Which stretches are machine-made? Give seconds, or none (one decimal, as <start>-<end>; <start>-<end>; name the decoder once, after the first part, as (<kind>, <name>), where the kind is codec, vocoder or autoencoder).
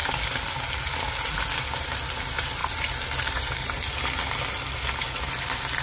none